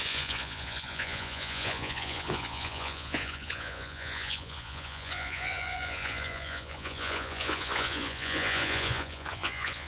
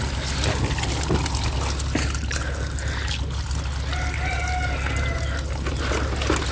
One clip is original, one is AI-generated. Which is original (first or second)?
second